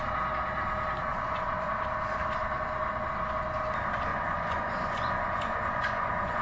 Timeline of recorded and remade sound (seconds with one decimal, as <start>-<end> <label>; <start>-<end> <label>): 0.0-1.1 recorded; 1.1-1.7 remade; 1.7-4.1 recorded; 4.1-6.4 remade